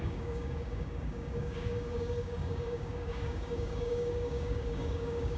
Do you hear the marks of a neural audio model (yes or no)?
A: yes